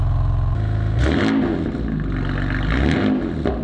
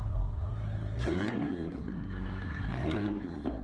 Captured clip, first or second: first